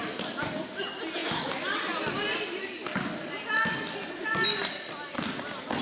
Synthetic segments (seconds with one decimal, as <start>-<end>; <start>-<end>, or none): none